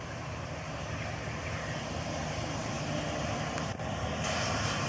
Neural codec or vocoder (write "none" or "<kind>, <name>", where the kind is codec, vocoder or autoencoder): none